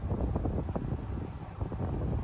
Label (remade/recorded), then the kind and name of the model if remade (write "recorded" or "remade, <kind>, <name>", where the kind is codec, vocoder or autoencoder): recorded